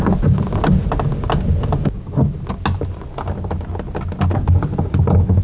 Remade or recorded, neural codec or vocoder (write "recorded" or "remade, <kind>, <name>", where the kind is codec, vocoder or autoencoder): recorded